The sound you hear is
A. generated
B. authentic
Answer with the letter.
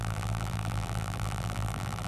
A